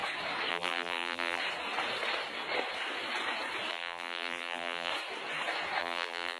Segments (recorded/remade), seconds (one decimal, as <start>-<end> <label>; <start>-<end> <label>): 0.0-0.5 recorded; 0.5-1.4 remade; 1.4-3.7 recorded; 3.7-4.9 remade; 4.9-5.8 recorded; 5.8-6.4 remade